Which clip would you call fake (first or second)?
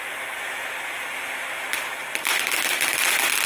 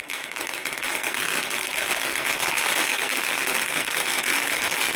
second